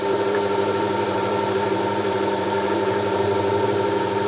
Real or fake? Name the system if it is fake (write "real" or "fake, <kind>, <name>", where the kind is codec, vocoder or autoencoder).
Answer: fake, vocoder, BigVGAN v2